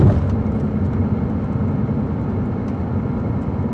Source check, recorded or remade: recorded